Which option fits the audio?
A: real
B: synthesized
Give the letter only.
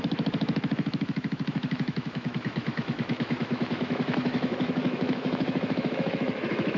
B